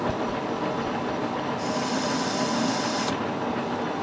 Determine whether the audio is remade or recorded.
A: recorded